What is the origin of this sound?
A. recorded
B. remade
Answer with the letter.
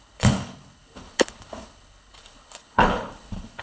B